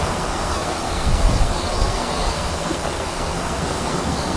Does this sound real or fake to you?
fake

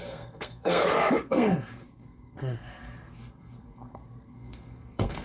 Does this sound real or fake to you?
fake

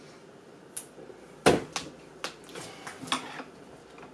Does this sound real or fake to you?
real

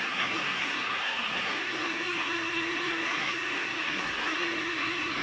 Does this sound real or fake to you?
fake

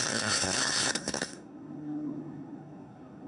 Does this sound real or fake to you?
fake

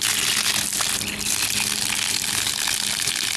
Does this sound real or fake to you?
real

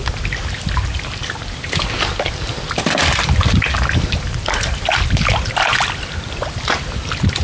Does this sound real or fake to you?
real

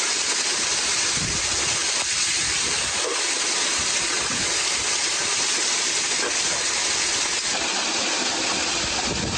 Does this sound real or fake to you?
real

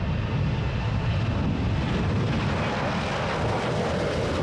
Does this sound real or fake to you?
real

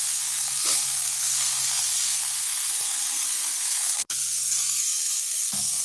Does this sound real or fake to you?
fake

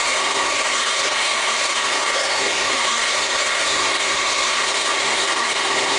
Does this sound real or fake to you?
fake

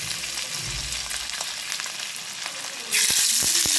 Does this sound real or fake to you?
real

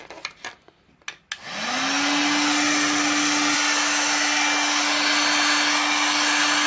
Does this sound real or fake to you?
real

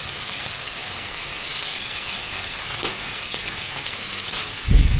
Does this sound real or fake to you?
fake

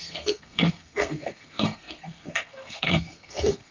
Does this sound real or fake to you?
fake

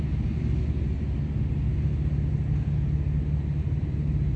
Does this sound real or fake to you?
real